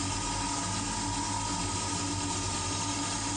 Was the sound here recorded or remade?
recorded